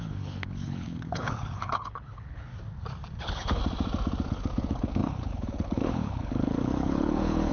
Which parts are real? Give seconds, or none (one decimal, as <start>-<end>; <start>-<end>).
2.5-3.2; 3.6-4.3